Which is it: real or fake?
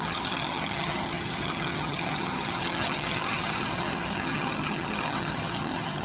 fake